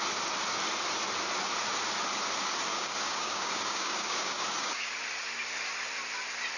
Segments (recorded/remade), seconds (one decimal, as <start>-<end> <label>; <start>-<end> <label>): 0.0-2.7 recorded; 2.7-4.9 remade; 4.9-6.6 recorded